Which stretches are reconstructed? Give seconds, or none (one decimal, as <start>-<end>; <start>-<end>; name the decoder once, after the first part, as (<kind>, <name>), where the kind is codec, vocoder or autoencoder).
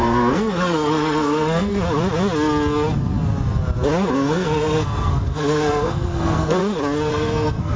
0.0-1.7 (codec, SNAC); 4.1-6.6; 7.1-7.8